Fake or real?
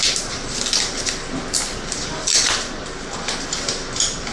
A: real